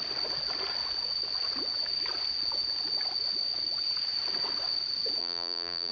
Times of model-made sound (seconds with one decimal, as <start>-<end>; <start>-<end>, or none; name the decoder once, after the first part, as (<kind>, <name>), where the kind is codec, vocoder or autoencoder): 5.2-5.9 (vocoder, BigVGAN v2)